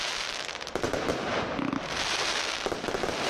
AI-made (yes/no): no